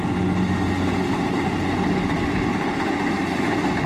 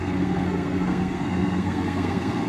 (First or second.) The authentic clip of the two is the first